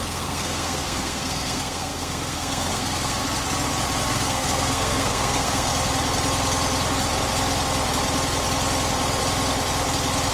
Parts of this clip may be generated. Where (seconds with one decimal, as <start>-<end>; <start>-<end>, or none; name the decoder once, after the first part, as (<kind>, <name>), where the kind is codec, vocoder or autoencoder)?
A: 0.0-3.2 (codec, SNAC); 4.1-5.7